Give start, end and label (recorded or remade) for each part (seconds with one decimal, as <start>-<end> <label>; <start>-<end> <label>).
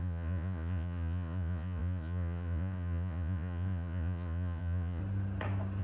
0.0-5.0 remade; 5.0-5.8 recorded